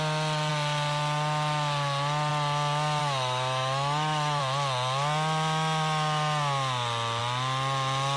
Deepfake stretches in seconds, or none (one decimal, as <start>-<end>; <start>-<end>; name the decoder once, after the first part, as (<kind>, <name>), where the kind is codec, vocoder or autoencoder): 3.0-4.4 (autoencoder, DAC-VAE)